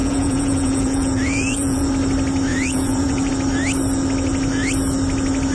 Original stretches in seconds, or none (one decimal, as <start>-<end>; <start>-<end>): 1.9-2.5; 3.3-5.5